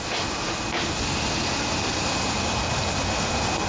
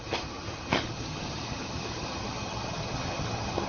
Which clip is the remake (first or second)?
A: second